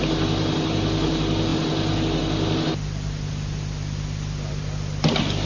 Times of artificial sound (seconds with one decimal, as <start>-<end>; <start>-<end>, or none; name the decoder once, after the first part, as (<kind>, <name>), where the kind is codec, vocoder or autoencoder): none